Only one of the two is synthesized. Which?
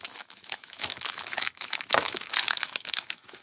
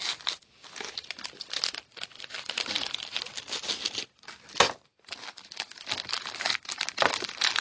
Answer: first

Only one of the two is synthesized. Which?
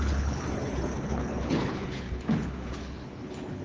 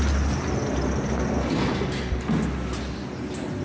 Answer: first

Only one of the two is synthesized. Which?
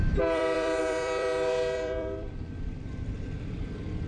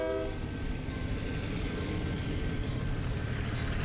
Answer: first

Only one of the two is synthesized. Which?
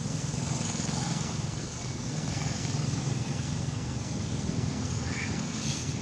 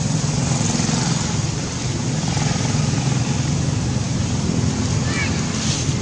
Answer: first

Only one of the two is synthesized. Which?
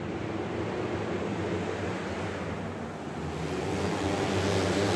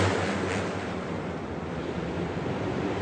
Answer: second